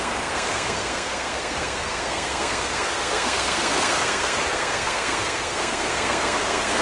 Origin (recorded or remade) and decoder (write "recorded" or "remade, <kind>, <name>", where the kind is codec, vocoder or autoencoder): remade, codec, SNAC